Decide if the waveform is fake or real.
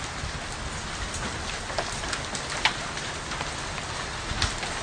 real